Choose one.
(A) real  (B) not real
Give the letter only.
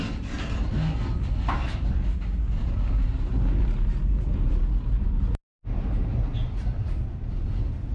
A